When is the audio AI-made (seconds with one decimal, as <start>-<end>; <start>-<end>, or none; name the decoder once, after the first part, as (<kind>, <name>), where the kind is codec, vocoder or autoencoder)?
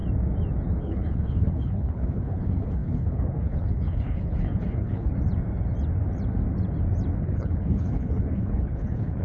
0.8-5.1 (codec, HILCodec); 7.2-9.2